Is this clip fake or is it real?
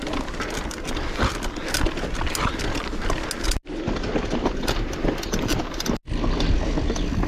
real